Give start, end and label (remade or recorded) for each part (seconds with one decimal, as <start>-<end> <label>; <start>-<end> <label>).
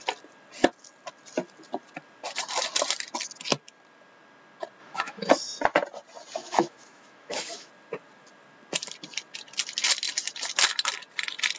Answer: 0.0-4.8 recorded; 4.8-5.3 remade; 5.3-6.4 recorded; 6.4-7.7 remade; 7.7-11.6 recorded